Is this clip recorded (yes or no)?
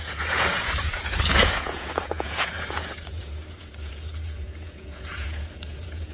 no